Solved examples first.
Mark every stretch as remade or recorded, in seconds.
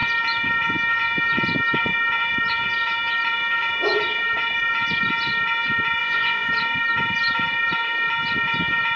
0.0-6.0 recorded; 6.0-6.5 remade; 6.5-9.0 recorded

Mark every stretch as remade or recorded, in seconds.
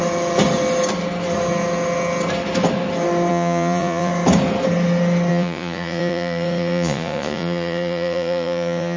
0.0-3.3 recorded; 3.3-4.1 remade; 4.1-5.3 recorded; 5.3-9.0 remade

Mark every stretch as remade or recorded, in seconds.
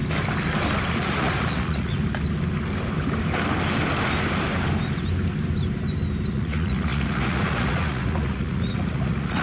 0.0-0.9 recorded; 0.9-2.0 remade; 2.0-6.3 recorded; 6.3-9.4 remade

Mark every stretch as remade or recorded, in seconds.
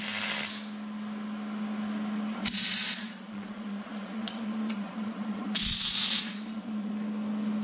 0.0-2.3 recorded; 2.3-6.9 remade; 6.9-7.6 recorded